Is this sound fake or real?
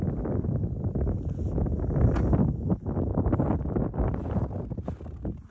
real